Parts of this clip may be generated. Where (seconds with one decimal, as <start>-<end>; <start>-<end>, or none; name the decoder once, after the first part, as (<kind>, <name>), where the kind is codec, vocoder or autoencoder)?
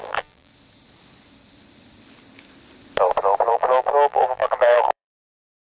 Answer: 0.0-0.5 (vocoder, BigVGAN v2); 3.5-5.7